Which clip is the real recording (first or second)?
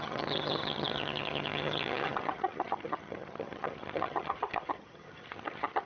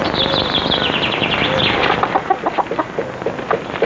second